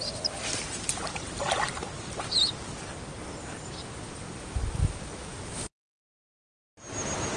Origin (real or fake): real